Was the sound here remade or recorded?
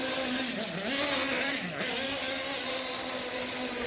recorded